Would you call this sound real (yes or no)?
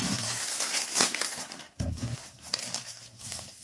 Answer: no